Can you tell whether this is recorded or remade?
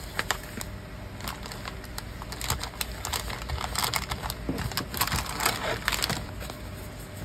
recorded